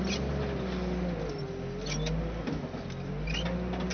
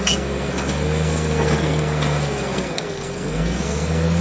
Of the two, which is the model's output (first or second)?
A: second